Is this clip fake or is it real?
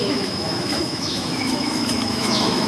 fake